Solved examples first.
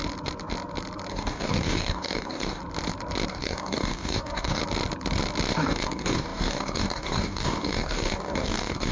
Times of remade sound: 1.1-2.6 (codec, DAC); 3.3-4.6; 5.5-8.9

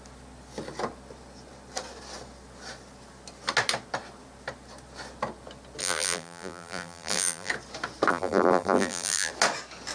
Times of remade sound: 5.8-7.5 (vocoder, BigVGAN v2); 8.1-9.3

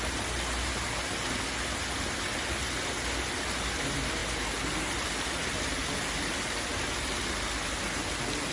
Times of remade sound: none

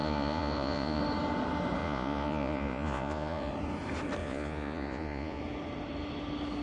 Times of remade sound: 0.0-1.0 (vocoder, Vocos); 1.8-3.5; 4.2-5.4